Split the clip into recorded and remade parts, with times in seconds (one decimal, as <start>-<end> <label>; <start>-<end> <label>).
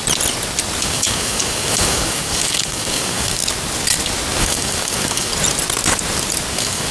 0.0-0.8 recorded; 0.8-3.4 remade; 3.4-4.4 recorded; 4.4-5.3 remade; 5.3-6.5 recorded; 6.5-6.9 remade